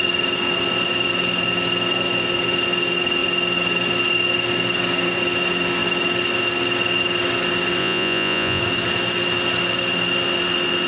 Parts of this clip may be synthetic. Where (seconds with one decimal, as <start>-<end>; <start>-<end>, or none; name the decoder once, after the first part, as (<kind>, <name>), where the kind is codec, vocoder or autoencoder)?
7.8-8.6 (vocoder, Vocos)